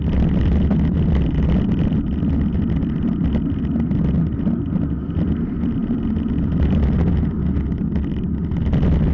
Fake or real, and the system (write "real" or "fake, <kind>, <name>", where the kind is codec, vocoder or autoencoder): real